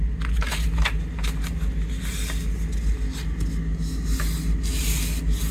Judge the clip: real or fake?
real